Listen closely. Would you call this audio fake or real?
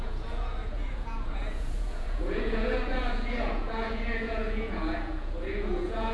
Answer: fake